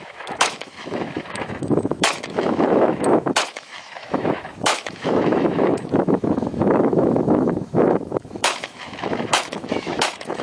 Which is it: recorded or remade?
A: remade